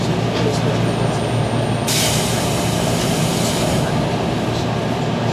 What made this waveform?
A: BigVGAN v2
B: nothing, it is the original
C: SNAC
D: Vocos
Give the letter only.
B